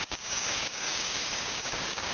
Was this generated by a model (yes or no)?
yes